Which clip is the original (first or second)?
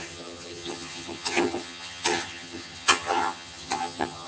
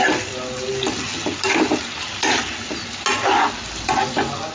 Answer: second